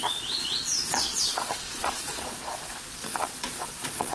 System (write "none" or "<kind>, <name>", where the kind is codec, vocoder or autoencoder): vocoder, Vocos